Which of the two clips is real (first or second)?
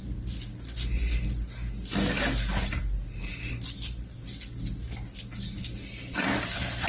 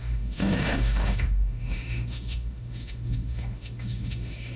first